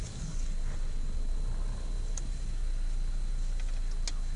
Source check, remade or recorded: recorded